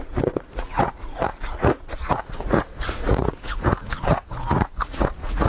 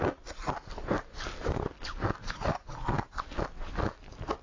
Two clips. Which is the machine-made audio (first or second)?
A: first